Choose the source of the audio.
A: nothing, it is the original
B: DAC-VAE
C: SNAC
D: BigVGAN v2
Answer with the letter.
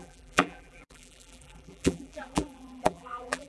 D